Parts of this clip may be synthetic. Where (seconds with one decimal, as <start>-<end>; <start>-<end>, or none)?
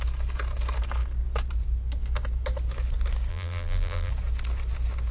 3.3-4.1